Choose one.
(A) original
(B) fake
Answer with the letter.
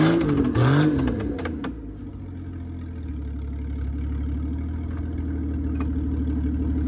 A